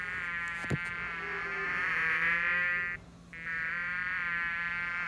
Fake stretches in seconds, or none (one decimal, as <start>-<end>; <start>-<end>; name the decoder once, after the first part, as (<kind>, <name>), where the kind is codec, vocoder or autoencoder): none